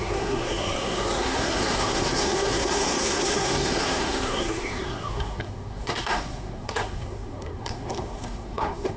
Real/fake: fake